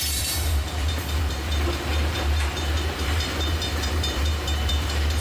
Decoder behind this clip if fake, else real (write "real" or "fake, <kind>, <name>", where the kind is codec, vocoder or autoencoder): fake, vocoder, BigVGAN v2